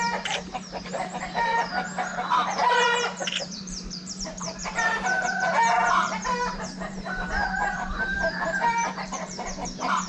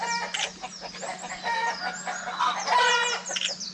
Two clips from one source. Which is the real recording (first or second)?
second